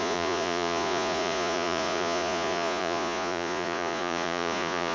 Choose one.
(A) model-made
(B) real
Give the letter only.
A